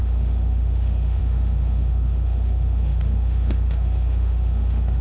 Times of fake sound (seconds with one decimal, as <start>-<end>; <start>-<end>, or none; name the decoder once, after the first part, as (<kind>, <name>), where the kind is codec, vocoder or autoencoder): 0.0-5.0 (autoencoder, DAC-VAE)